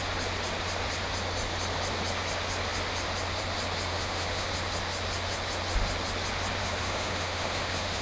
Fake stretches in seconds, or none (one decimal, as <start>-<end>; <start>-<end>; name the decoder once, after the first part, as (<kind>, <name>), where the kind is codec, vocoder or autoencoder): 3.9-4.5 (autoencoder, DAC-VAE); 6.6-8.0